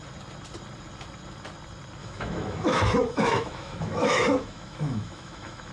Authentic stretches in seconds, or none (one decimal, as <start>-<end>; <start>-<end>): 0.0-2.0

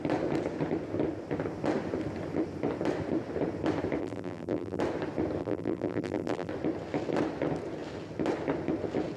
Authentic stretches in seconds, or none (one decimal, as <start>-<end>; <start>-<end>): 0.0-4.0; 4.8-5.4; 6.5-9.2

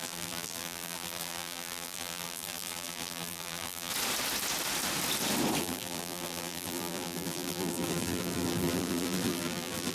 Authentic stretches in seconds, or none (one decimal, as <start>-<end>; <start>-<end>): 3.9-5.6

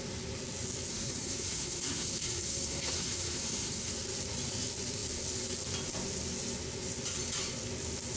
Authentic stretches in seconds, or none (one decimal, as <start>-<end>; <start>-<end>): 0.0-0.9; 3.9-8.2

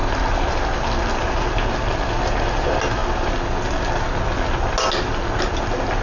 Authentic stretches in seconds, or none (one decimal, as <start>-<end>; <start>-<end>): 0.0-6.0

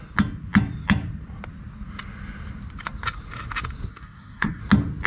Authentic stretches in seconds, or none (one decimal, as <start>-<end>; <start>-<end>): 0.0-3.9; 4.6-5.1